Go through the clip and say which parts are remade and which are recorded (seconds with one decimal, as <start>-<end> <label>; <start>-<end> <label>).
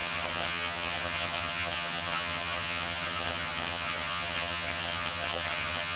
0.0-6.0 remade